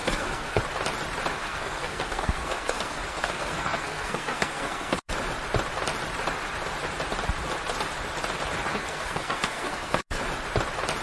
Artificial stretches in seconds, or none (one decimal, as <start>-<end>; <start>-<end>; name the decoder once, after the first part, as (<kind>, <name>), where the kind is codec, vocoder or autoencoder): 0.0-0.6 (codec, SNAC); 1.3-5.1; 8.7-10.2